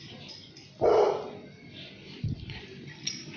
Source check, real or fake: real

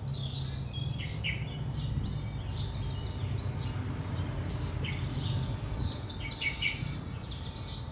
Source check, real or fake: real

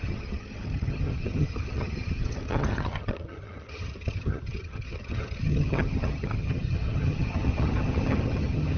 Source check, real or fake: fake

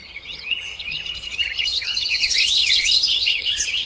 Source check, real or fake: fake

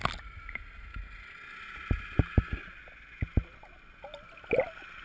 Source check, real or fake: real